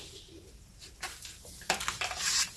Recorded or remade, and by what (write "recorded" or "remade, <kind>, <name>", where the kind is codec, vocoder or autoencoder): recorded